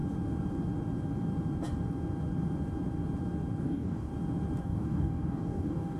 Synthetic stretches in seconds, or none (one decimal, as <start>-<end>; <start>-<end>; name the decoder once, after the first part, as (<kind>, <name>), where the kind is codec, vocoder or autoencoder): 3.6-4.1 (codec, DAC); 4.6-6.0